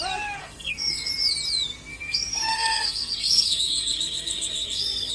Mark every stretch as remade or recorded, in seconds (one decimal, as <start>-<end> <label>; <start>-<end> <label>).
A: 0.0-0.4 recorded; 0.4-1.1 remade; 1.1-1.9 recorded; 1.9-5.1 remade